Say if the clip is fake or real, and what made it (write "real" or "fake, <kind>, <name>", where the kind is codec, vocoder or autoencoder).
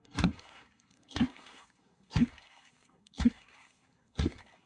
fake, codec, SNAC